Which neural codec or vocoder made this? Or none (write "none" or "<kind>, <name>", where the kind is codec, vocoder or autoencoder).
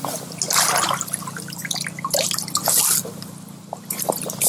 none